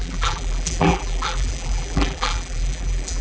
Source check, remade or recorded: remade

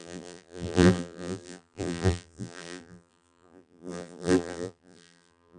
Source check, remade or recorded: remade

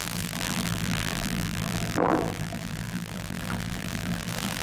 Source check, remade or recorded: remade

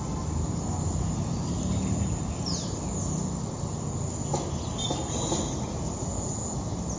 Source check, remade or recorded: recorded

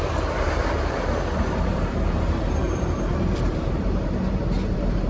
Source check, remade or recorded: remade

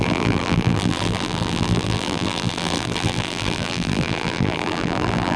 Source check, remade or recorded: remade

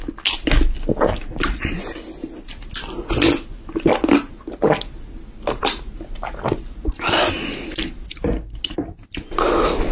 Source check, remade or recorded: recorded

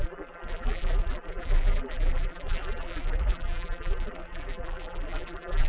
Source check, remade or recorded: remade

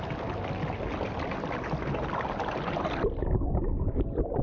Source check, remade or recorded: recorded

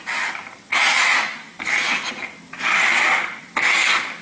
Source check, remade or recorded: recorded